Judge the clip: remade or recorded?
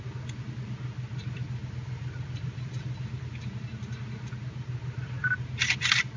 recorded